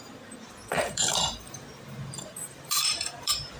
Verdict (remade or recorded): remade